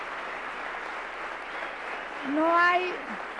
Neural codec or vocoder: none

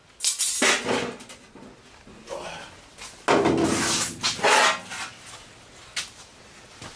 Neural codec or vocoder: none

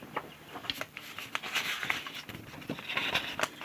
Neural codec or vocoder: none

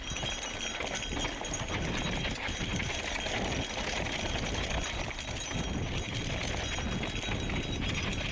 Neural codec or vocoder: none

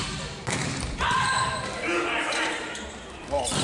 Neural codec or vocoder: none